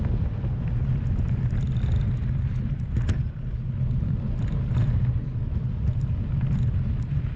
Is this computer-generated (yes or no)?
no